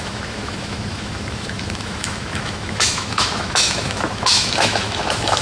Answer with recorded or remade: remade